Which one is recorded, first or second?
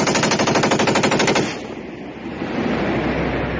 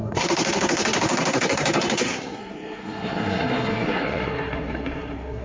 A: first